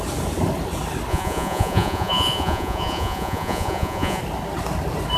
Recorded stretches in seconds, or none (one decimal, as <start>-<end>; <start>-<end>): 0.0-1.1; 4.2-5.2